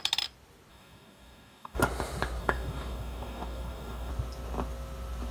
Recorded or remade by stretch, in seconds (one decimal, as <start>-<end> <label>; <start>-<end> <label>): 0.0-0.7 recorded; 0.7-1.8 remade; 1.8-2.4 recorded; 2.4-4.1 remade; 4.1-5.3 recorded